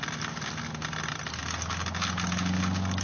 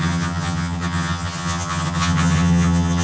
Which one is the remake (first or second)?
second